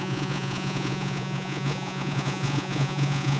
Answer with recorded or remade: remade